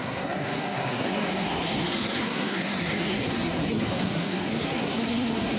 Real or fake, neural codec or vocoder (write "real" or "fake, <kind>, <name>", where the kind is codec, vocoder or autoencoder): fake, codec, SNAC